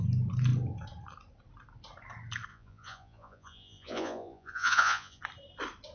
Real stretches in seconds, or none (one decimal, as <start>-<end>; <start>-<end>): 0.0-2.5; 5.2-5.9